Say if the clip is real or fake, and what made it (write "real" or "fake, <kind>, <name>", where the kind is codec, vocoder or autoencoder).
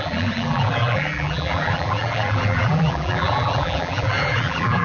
fake, vocoder, BigVGAN v2